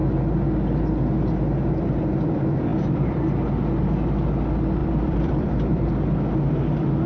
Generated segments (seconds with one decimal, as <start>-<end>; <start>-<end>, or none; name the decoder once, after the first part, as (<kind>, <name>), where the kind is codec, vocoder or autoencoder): 2.7-3.2 (vocoder, BigVGAN v2); 4.8-5.9